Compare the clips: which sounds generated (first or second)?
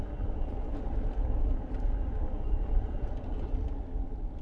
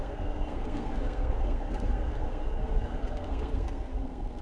second